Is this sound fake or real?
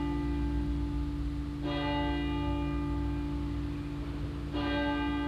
real